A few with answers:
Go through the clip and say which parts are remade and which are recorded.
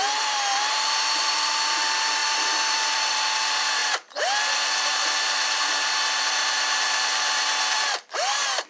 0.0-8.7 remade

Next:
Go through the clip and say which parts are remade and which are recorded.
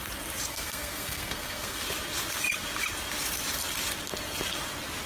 0.0-0.5 recorded; 0.5-1.8 remade; 1.8-5.1 recorded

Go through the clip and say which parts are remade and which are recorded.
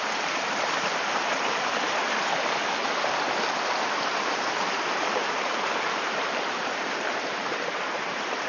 0.0-2.6 remade; 2.6-3.8 recorded; 3.8-8.5 remade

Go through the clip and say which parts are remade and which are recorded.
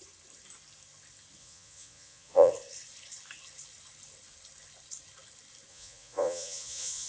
0.0-1.4 recorded; 1.4-2.5 remade; 2.5-5.7 recorded; 5.7-7.1 remade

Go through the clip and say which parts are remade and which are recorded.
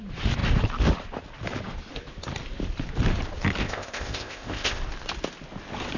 0.0-3.6 recorded; 3.6-4.8 remade; 4.8-6.0 recorded